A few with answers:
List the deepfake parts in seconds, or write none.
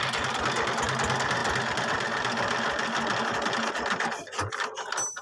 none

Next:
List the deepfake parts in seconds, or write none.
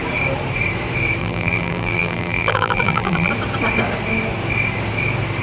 1.2-3.3 (vocoder, BigVGAN v2)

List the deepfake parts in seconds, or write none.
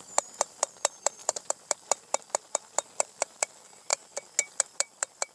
0.0-3.9 (vocoder, BigVGAN v2); 4.5-5.3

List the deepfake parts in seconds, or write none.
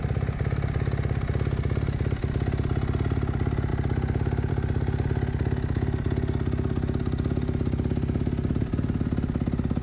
none